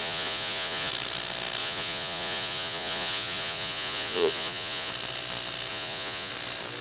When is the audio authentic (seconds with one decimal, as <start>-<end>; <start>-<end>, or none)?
0.9-1.6; 4.9-5.7; 6.3-6.8